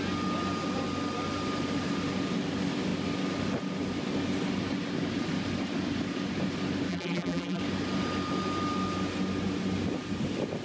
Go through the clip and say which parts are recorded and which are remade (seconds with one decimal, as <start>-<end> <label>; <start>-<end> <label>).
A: 0.0-6.9 recorded; 6.9-7.6 remade; 7.6-10.6 recorded